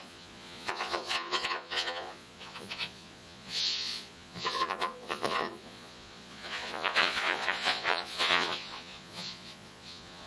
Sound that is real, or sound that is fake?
fake